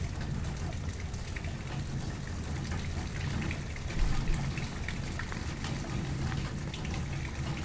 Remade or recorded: recorded